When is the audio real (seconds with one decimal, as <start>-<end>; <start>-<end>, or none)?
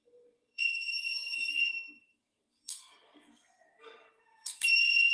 none